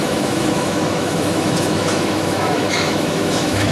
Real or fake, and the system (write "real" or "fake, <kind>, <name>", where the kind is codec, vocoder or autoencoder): fake, autoencoder, DAC-VAE